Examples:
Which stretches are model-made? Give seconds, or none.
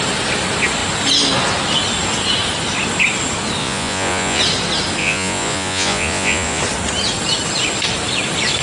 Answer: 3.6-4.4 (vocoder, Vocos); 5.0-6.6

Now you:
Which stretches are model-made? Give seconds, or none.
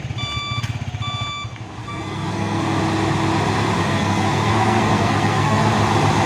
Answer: 1.8-2.8 (codec, SNAC); 3.8-5.7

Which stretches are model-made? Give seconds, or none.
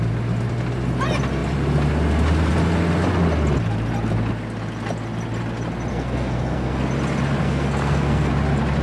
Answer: 5.9-6.8 (codec, SNAC); 7.4-8.3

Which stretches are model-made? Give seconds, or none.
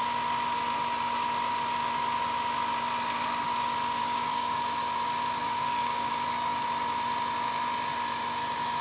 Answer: 4.0-4.6 (codec, DAC); 5.4-6.1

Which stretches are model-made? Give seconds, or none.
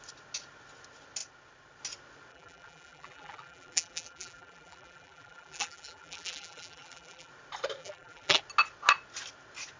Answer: 2.3-7.3 (vocoder, BigVGAN v2); 7.8-8.4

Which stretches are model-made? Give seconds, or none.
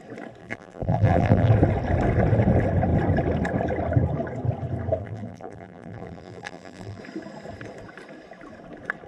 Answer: 0.4-1.5 (vocoder, BigVGAN v2); 5.0-7.0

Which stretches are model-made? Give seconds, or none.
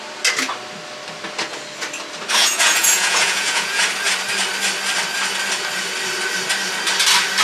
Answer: 2.4-3.8 (vocoder, Vocos)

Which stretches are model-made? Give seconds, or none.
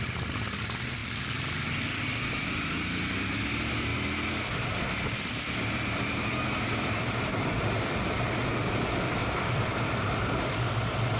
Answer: none